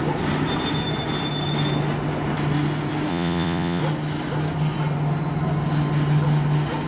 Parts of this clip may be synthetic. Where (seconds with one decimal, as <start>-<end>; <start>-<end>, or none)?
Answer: 3.1-3.8